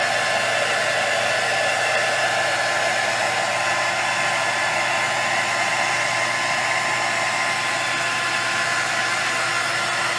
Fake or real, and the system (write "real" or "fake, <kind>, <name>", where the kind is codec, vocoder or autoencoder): real